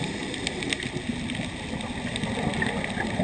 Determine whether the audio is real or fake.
real